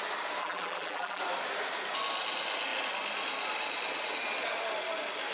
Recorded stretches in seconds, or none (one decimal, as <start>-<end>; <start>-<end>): 0.0-0.4; 1.2-5.3